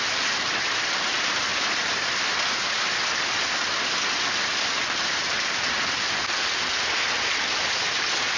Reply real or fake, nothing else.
real